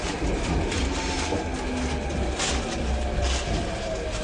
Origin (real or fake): real